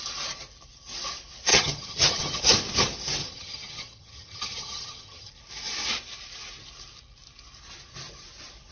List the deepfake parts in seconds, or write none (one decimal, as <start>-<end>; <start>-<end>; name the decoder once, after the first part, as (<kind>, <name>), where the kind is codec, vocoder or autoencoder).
1.5-2.4 (vocoder, HiFi-GAN); 3.2-5.3